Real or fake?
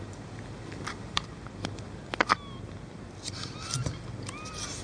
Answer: real